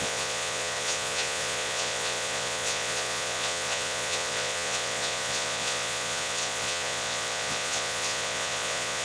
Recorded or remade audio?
remade